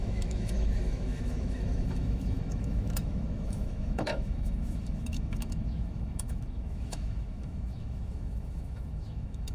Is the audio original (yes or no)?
no